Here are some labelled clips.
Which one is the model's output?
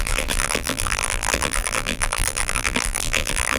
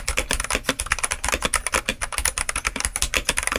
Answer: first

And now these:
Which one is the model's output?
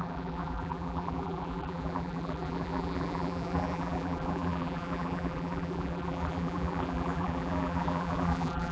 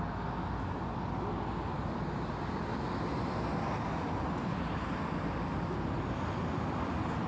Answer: first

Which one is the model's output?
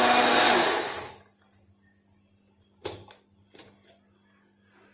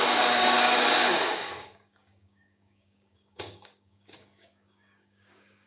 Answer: second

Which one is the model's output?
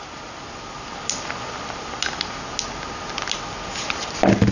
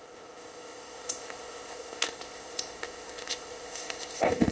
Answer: second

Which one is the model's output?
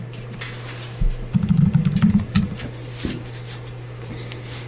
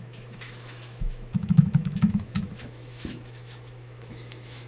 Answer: second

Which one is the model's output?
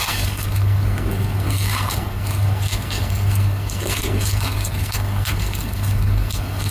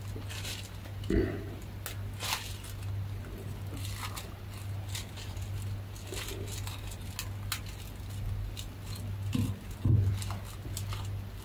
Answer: first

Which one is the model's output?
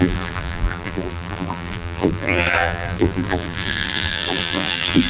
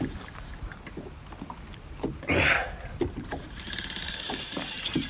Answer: first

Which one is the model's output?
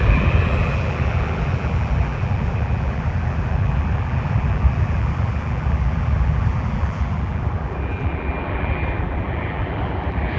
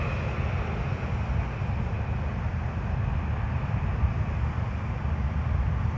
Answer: first